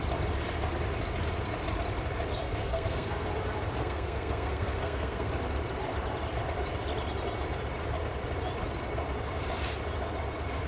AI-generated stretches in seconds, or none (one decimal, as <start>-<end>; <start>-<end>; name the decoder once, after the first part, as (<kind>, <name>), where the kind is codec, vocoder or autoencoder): 2.4-3.3 (codec, SNAC); 3.8-5.3